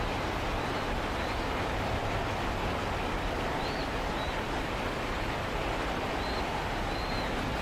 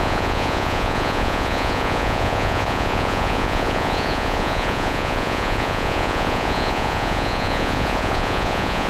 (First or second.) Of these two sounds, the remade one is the second